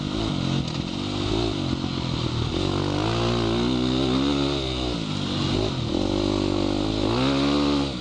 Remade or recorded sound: recorded